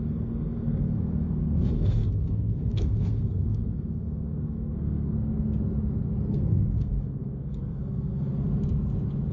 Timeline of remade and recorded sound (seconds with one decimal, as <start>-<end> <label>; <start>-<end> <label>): 0.0-5.3 remade; 5.3-6.3 recorded; 6.3-8.3 remade; 8.3-9.3 recorded